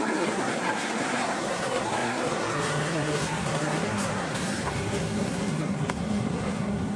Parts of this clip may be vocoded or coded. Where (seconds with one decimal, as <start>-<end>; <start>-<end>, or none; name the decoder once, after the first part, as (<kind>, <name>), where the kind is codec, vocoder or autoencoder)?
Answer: 0.0-7.0 (codec, SNAC)